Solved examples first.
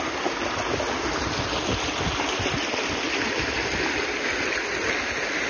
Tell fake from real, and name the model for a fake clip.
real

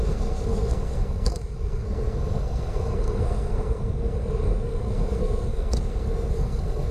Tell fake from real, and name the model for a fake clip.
fake, codec, SNAC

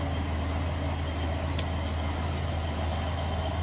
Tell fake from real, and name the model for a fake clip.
real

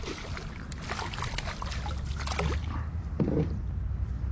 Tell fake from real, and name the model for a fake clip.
real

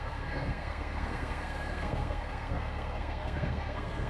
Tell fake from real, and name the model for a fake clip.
fake, codec, SNAC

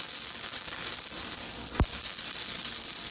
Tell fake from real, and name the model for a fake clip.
real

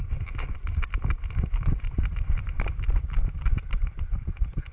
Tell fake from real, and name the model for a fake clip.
real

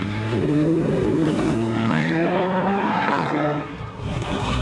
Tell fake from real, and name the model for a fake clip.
fake, codec, SNAC